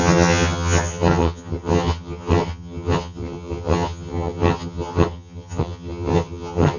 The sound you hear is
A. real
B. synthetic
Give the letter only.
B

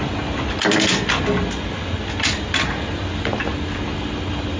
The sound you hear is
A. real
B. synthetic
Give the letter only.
A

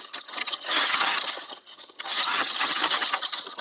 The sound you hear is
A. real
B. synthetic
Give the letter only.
B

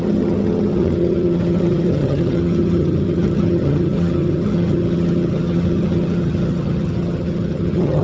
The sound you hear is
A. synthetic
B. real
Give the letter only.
A